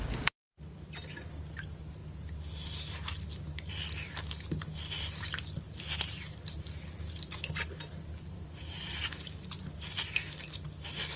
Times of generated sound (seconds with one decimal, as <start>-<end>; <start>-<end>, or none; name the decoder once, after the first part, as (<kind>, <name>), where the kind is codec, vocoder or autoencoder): none